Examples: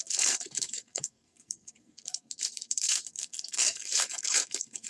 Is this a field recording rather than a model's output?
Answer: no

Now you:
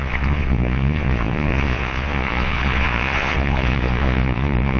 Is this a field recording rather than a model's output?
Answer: no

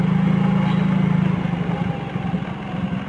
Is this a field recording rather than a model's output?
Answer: yes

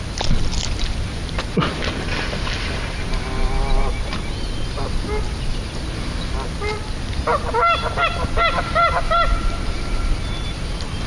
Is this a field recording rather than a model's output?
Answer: yes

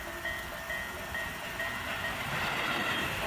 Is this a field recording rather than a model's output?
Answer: yes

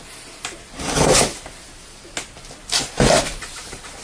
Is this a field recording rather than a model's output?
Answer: yes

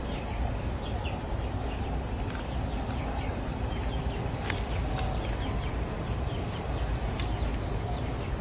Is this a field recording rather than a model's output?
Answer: yes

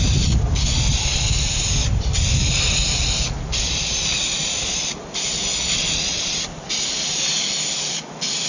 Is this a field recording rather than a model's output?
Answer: yes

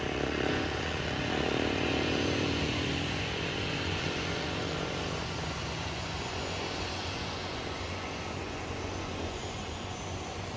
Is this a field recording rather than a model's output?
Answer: no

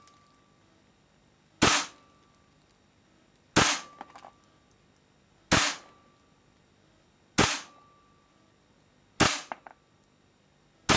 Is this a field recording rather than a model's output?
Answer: yes